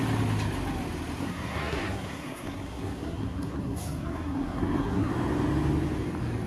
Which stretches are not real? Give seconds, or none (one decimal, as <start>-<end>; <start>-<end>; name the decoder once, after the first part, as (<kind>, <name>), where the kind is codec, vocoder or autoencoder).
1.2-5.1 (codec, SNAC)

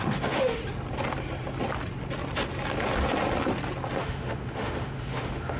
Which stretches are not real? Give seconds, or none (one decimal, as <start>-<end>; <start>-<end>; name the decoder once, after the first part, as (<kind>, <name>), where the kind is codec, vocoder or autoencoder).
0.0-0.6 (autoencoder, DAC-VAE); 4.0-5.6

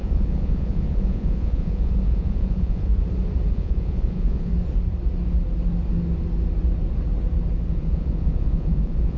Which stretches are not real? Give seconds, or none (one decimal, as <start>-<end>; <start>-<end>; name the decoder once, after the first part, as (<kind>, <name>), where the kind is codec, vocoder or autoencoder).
0.0-2.9 (vocoder, Vocos); 3.5-4.5; 7.7-9.2